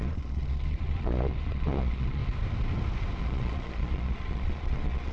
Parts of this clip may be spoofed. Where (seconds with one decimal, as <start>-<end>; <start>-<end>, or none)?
0.0-2.2; 3.2-5.1